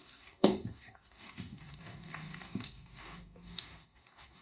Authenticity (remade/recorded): remade